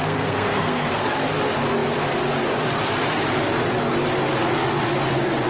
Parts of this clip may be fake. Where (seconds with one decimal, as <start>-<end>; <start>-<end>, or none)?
0.0-1.1